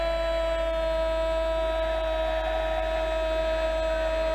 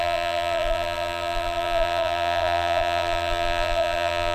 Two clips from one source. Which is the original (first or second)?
first